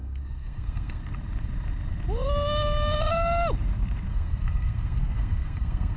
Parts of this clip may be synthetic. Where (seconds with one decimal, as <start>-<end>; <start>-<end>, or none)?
0.0-1.0; 4.1-6.0

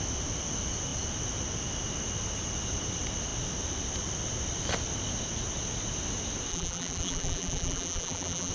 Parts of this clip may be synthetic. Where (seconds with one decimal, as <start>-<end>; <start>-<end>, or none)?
6.5-8.5